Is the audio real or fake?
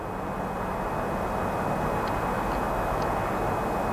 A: real